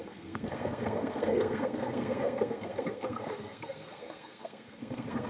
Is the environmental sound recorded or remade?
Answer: remade